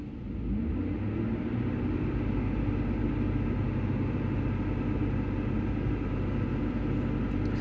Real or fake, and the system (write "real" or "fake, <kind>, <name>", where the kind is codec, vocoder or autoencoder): real